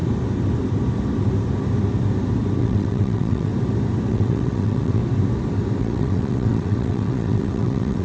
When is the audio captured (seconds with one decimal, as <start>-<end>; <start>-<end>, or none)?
0.0-2.6; 3.5-4.1; 5.0-5.8